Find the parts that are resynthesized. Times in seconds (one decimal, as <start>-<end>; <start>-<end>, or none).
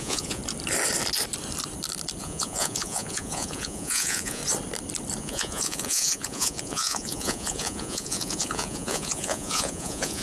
0.0-0.4; 2.2-4.4; 5.2-10.2